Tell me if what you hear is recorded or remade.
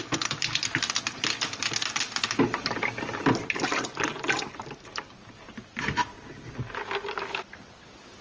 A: recorded